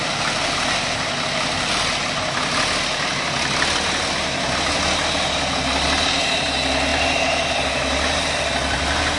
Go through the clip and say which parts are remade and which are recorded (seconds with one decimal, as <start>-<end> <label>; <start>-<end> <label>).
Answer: 0.0-9.2 recorded